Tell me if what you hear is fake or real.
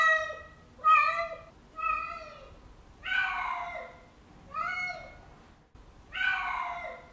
real